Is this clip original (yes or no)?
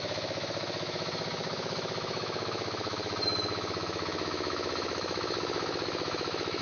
no